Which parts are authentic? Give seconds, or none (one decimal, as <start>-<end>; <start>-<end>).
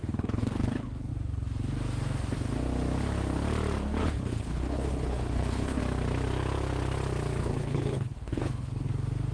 1.1-4.0; 5.8-7.4; 8.9-9.3